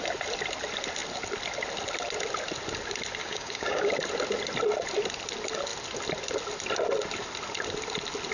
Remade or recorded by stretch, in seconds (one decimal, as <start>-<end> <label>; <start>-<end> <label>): 0.0-3.2 recorded; 3.2-3.9 remade; 3.9-8.3 recorded